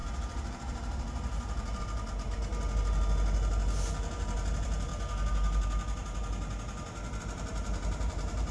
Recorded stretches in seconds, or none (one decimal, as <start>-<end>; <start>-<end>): 2.5-4.1; 4.9-7.2